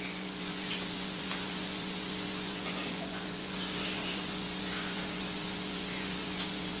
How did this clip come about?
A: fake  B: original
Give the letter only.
A